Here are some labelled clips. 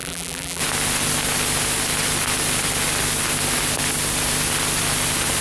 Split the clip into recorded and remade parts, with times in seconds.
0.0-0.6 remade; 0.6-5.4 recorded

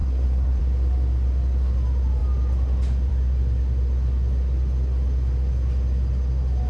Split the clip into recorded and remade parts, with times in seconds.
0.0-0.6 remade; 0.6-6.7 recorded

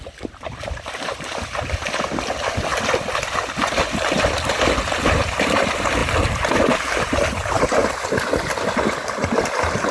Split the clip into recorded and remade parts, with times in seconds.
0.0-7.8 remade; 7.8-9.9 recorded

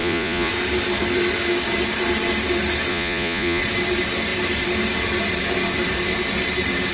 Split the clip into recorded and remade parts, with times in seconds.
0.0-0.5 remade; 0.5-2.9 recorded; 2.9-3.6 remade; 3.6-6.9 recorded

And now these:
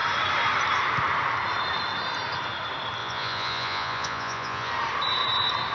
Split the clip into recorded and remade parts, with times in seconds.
0.0-3.0 recorded; 3.0-4.7 remade; 4.7-5.7 recorded

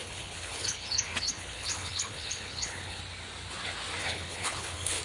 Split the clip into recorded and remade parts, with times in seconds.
0.0-3.0 remade; 3.0-4.0 recorded; 4.0-5.0 remade